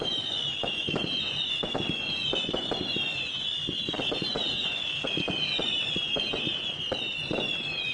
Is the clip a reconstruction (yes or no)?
yes